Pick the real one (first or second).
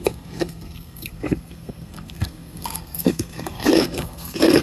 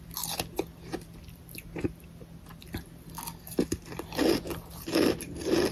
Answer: second